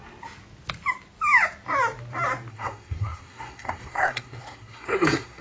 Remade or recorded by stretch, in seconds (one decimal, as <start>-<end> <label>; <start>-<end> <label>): 0.0-2.5 recorded; 2.5-5.4 remade